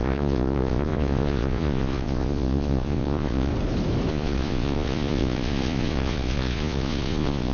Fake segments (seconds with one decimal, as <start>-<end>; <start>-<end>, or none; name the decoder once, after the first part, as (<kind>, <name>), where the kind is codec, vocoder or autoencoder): 0.0-3.5 (vocoder, Vocos); 4.1-7.5